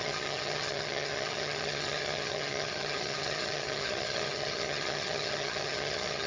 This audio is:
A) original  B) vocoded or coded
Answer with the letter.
B